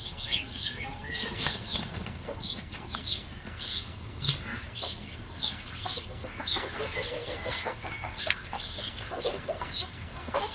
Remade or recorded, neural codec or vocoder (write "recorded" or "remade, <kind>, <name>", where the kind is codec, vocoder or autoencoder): remade, codec, SNAC